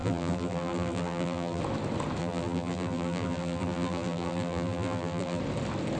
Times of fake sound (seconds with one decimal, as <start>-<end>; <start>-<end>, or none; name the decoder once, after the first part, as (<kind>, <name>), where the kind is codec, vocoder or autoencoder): 0.0-1.6 (vocoder, BigVGAN v2); 2.2-5.4